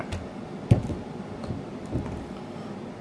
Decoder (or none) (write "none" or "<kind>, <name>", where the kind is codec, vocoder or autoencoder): none